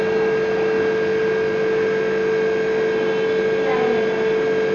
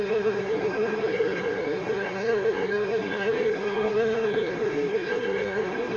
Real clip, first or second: first